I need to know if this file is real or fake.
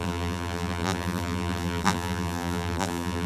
fake